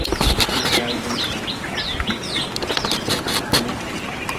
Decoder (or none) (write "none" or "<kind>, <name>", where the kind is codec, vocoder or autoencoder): none